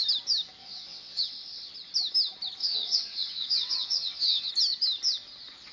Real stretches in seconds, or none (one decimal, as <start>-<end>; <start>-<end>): 0.0-0.6; 1.7-2.6; 4.5-5.7